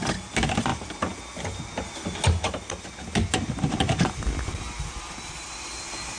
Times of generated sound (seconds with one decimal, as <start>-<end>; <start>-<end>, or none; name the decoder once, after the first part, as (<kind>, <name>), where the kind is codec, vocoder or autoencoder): none